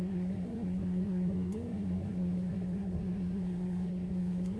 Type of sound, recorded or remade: remade